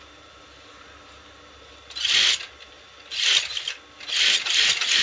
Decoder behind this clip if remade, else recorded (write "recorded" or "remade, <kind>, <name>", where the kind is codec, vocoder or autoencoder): recorded